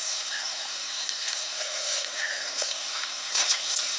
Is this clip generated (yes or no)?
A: yes